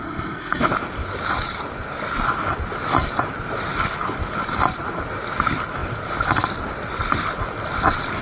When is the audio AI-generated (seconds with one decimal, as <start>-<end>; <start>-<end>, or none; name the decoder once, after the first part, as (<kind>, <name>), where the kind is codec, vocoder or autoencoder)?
0.0-0.6 (codec, SNAC)